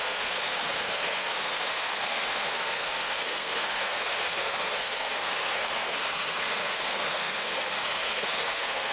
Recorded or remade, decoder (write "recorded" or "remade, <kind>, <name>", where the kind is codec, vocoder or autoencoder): remade, codec, SNAC